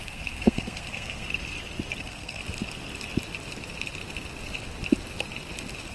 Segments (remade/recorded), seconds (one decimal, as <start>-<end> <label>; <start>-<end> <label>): 0.0-1.3 remade; 1.3-2.0 recorded; 2.0-2.4 remade; 2.4-5.9 recorded